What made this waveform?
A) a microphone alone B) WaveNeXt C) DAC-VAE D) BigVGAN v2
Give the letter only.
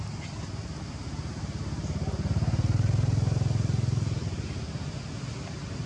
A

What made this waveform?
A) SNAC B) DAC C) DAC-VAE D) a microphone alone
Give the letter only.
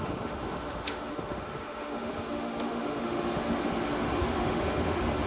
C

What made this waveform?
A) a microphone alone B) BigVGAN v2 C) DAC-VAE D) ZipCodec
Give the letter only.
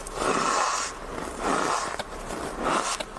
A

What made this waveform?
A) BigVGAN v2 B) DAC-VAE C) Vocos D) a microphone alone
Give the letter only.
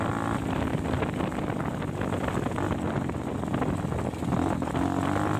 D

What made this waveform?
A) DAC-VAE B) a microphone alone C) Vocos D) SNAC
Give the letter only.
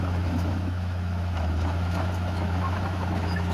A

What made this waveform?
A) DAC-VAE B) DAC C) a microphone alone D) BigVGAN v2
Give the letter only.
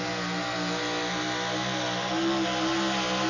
C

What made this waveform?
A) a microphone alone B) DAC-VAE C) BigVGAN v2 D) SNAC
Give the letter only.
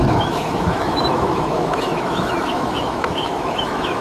B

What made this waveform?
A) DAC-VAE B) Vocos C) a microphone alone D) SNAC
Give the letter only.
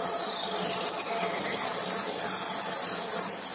C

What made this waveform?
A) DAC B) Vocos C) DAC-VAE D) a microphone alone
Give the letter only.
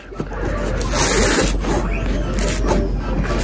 D